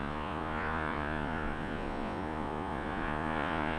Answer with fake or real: fake